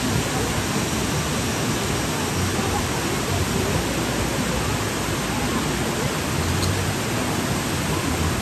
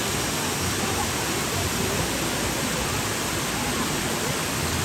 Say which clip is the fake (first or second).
second